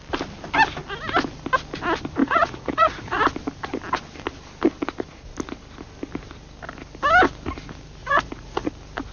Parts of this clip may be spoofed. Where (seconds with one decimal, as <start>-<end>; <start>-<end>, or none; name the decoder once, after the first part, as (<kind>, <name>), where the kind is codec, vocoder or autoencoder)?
2.2-3.2 (vocoder, Vocos); 8.0-8.7